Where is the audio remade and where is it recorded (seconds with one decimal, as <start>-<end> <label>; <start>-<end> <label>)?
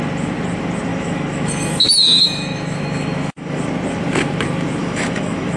0.0-0.9 recorded; 0.9-3.6 remade; 3.6-4.8 recorded; 4.8-5.6 remade